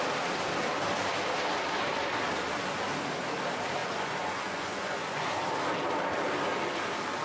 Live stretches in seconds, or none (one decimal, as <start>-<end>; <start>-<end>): 0.0-3.8; 5.3-7.2